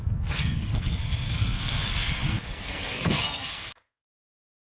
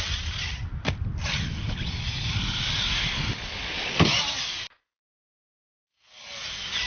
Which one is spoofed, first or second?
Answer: first